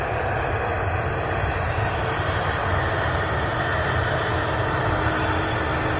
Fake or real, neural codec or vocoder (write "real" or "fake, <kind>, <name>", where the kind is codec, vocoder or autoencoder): real